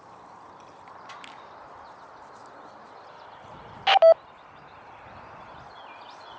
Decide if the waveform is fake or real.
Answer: real